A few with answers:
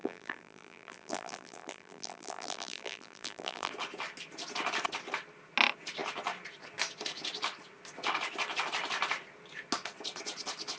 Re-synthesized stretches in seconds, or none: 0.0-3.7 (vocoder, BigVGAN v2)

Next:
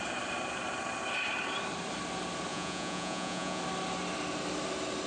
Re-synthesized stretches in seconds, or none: 2.5-3.6 (vocoder, Vocos)

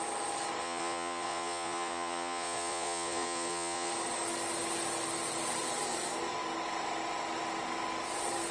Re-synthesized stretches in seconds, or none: 0.6-3.9 (vocoder, Vocos)

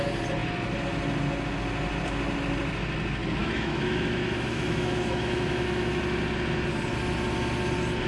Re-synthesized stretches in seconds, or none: 3.4-6.0 (autoencoder, DAC-VAE)

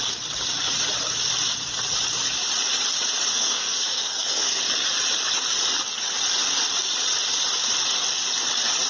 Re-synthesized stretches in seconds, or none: 3.3-4.6 (codec, SNAC)

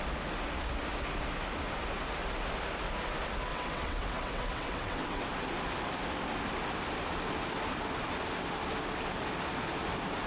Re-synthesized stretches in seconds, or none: 3.5-5.2 (vocoder, WaveNeXt)

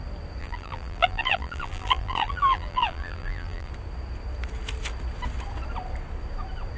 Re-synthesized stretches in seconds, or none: 0.4-3.7 (vocoder, BigVGAN v2)

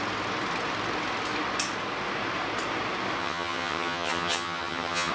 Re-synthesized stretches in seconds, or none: 3.2-5.1 (vocoder, HiFi-GAN)